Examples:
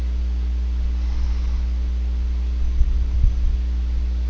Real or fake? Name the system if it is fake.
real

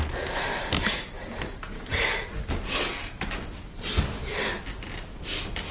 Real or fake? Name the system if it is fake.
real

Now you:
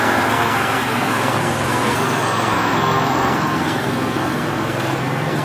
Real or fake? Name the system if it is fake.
fake, codec, SNAC